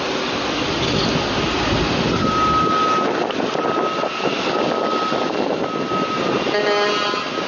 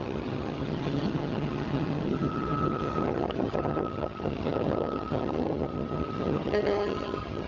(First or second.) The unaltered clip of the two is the first